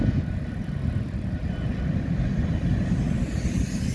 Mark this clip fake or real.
real